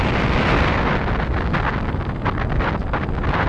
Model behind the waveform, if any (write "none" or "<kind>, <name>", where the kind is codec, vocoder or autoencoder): none